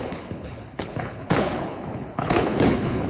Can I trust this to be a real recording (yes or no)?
no